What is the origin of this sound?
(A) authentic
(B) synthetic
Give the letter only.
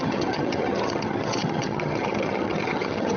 B